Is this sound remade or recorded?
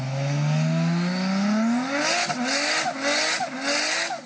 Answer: recorded